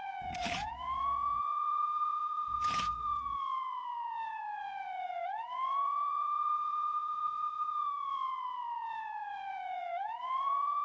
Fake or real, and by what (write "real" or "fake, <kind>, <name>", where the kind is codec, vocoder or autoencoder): fake, vocoder, Vocos